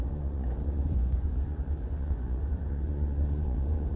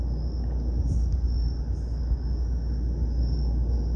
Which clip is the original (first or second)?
second